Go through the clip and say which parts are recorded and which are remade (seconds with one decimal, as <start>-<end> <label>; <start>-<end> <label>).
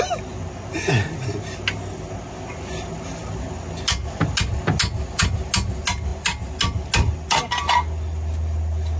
0.0-9.0 recorded